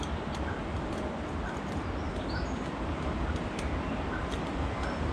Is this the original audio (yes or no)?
yes